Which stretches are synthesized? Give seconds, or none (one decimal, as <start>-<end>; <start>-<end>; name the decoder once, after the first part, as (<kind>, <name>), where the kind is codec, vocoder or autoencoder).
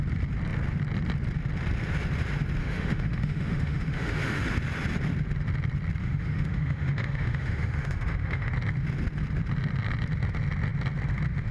2.6-4.4 (autoencoder, DAC-VAE); 6.0-8.5